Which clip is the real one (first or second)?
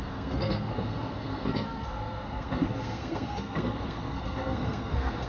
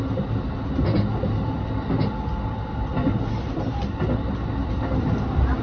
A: second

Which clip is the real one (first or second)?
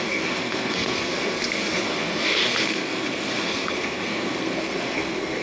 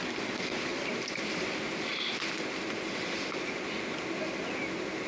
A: second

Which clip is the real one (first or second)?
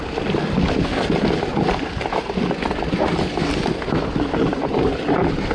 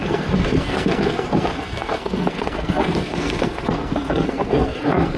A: first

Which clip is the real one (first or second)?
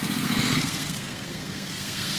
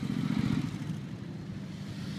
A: second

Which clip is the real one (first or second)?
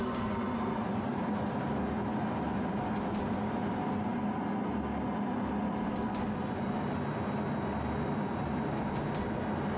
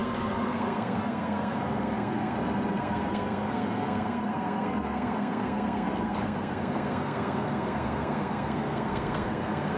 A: first